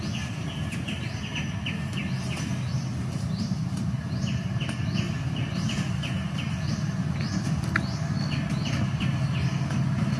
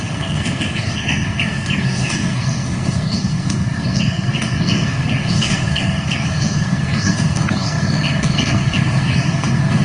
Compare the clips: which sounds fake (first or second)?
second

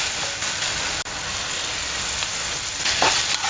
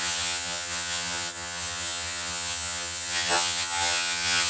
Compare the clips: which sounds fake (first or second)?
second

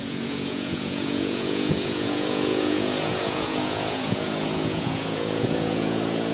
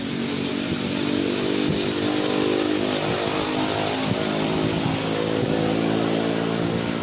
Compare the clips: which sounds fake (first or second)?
first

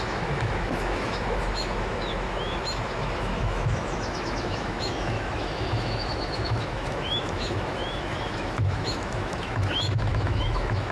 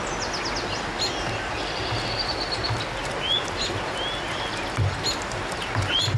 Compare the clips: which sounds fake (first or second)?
first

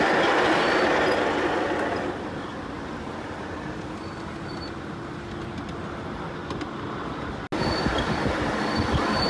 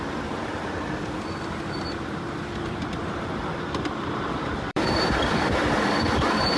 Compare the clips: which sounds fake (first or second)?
second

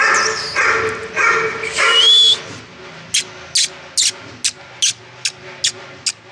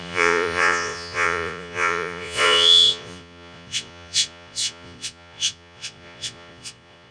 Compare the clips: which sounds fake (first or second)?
second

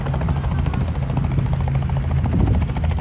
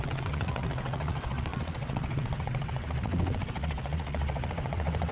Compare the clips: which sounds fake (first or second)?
second